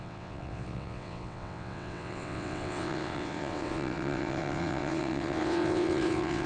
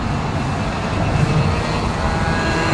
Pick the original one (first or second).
second